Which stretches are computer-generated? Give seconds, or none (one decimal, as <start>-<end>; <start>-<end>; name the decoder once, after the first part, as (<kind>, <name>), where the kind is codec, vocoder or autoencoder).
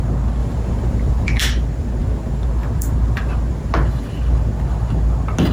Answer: 0.4-1.4 (vocoder, BigVGAN v2); 2.0-3.5